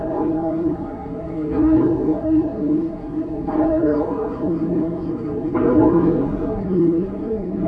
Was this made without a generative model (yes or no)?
no